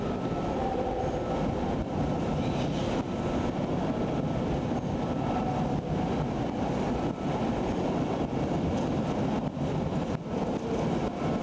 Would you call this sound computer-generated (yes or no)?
no